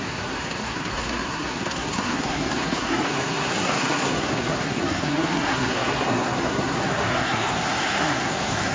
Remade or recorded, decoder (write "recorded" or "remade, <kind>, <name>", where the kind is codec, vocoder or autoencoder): remade, codec, SNAC